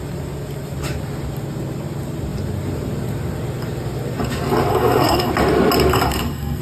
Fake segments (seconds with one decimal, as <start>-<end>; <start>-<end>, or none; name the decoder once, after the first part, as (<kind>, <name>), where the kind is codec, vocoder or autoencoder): 4.7-5.3 (codec, SNAC); 5.9-6.6